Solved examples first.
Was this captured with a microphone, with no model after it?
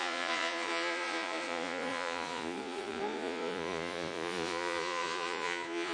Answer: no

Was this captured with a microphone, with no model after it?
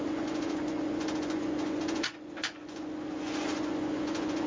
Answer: no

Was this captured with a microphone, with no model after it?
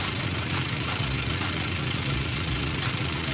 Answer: no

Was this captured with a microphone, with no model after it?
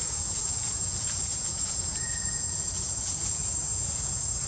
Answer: no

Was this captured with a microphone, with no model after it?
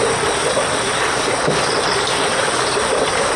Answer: yes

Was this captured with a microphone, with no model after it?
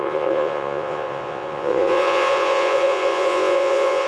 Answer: no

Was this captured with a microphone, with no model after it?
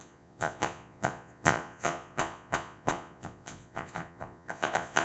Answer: no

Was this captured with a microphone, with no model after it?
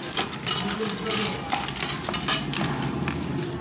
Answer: yes